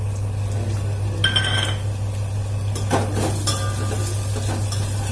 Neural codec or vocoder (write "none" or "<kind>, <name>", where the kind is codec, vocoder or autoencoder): none